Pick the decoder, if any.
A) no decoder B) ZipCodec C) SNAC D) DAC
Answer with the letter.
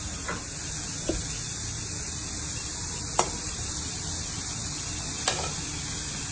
A